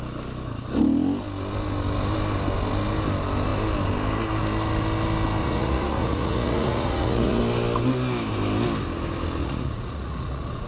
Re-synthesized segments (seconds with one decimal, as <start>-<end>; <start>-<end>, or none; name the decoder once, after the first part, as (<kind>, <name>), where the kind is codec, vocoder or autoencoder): 5.4-7.4 (vocoder, Vocos); 9.4-10.7